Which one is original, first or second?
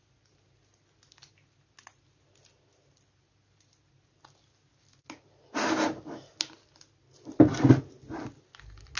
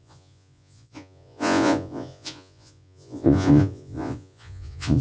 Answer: first